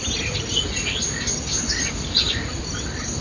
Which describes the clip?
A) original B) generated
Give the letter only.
A